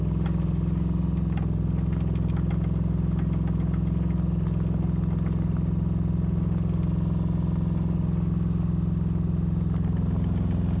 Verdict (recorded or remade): recorded